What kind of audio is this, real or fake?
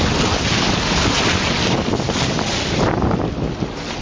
real